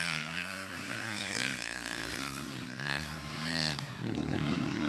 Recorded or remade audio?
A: remade